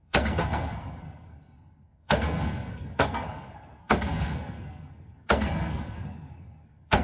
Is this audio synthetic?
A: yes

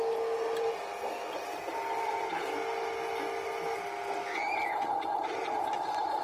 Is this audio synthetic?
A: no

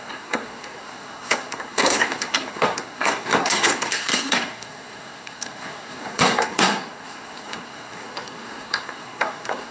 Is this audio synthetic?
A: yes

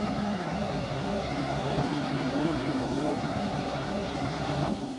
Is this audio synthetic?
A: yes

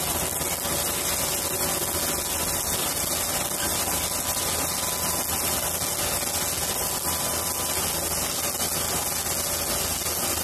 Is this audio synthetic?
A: no